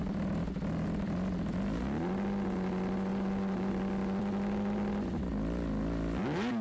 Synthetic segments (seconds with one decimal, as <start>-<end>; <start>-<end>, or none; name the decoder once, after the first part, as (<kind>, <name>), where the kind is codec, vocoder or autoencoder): 3.1-3.7 (vocoder, BigVGAN v2)